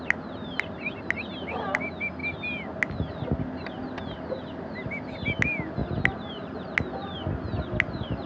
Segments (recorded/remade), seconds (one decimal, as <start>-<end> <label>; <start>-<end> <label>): 0.0-8.3 recorded